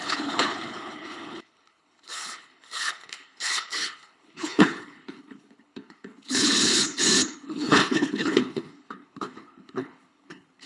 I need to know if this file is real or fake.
fake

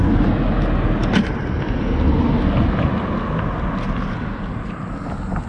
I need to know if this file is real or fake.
real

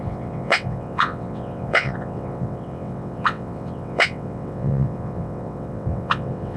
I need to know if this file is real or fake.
fake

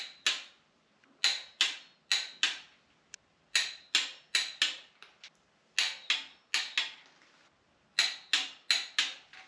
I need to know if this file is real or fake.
real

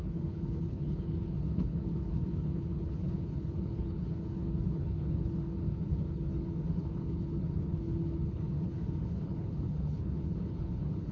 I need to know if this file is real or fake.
fake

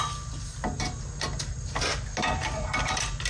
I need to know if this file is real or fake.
real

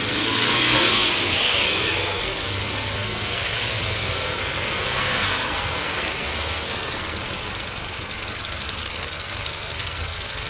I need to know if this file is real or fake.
fake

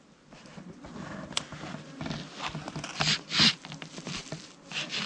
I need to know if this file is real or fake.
real